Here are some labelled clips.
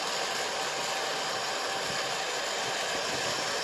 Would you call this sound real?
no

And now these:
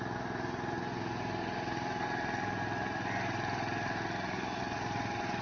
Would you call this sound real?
yes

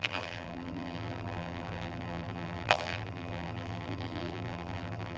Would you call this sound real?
no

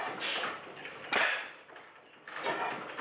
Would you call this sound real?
yes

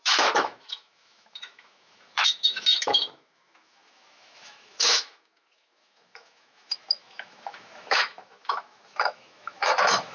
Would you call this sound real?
no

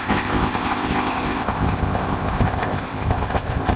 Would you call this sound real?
no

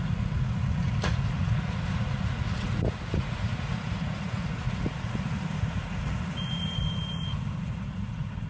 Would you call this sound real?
no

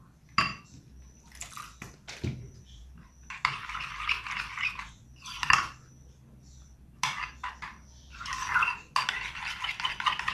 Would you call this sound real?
yes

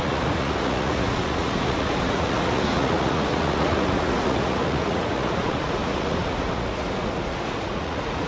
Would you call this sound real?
no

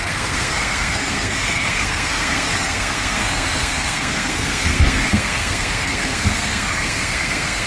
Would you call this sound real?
no